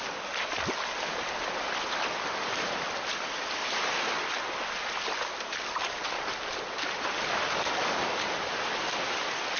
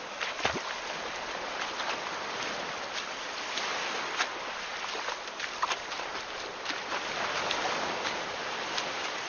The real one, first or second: first